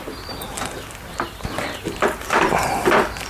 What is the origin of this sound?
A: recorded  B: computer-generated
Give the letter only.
A